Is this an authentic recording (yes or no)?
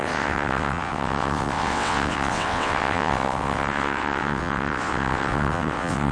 no